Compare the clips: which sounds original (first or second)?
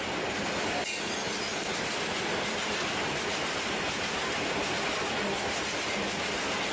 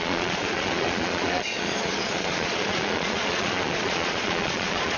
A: first